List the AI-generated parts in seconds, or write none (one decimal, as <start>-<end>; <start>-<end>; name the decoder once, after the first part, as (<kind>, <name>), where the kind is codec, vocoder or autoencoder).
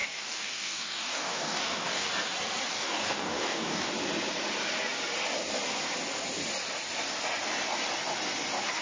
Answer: 0.0-2.1 (codec, DAC); 2.7-3.9